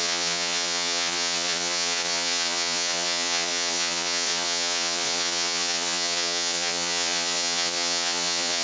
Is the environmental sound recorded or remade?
remade